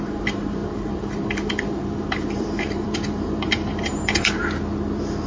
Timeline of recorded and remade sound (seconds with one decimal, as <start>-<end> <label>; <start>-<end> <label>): 0.0-4.4 remade; 4.4-5.3 recorded